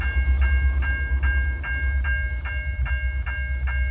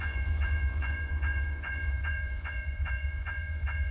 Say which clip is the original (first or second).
first